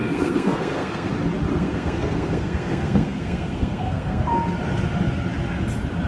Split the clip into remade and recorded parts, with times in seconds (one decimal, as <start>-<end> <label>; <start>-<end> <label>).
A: 0.0-1.1 remade; 1.1-1.5 recorded; 1.5-4.2 remade; 4.2-6.1 recorded